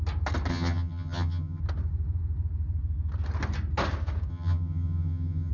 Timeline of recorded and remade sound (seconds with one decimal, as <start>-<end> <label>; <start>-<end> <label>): 0.0-0.5 recorded; 0.5-1.6 remade; 1.6-4.3 recorded; 4.3-5.5 remade